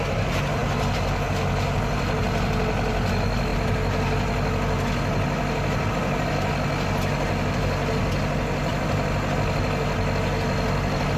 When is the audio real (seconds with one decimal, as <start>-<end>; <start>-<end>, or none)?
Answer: 0.0-11.2